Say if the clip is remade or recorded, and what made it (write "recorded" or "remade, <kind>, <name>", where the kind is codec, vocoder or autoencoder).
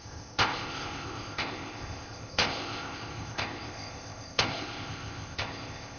remade, codec, ZipCodec